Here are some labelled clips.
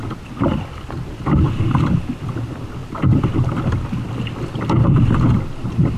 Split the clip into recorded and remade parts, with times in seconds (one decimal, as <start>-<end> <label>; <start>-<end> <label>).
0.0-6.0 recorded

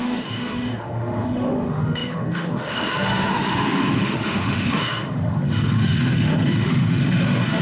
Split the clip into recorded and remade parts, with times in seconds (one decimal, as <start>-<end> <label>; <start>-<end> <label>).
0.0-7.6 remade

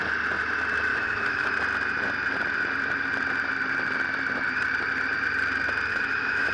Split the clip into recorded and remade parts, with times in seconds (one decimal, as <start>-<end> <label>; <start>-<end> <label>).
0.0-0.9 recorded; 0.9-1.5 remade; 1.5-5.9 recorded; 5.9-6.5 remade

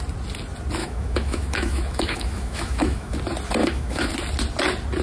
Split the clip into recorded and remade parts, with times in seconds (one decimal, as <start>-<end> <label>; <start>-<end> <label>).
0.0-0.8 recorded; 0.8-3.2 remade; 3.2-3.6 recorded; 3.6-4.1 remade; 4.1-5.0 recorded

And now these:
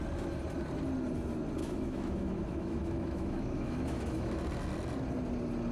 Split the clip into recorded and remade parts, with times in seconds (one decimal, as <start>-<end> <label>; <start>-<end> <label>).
0.0-1.6 recorded; 1.6-4.4 remade; 4.4-5.7 recorded

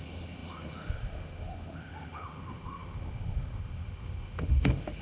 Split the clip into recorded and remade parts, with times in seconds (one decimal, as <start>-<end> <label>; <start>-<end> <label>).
0.0-5.0 remade

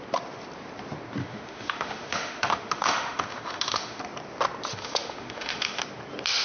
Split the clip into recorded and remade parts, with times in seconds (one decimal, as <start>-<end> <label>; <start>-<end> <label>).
0.0-1.2 recorded; 1.2-4.0 remade; 4.0-4.7 recorded; 4.7-5.8 remade; 5.8-6.4 recorded

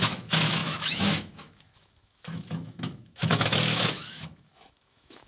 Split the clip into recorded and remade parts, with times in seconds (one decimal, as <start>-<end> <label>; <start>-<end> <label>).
0.0-5.3 remade